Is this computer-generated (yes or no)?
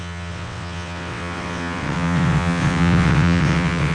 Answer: yes